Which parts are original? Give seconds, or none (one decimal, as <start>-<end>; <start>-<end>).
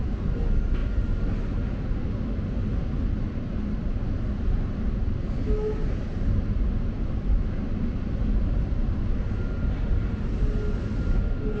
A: 0.0-11.6